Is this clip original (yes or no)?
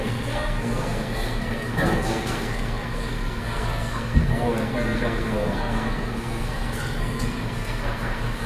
no